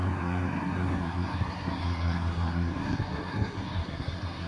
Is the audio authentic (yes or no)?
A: no